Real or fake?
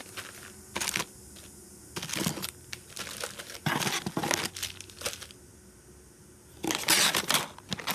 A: real